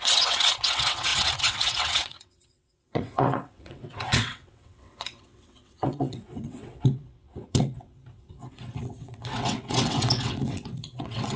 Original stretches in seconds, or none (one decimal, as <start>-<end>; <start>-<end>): none